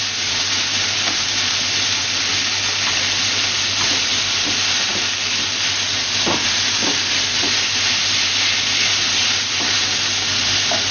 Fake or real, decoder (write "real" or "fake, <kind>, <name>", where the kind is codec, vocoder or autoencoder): real